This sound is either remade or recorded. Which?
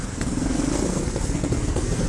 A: remade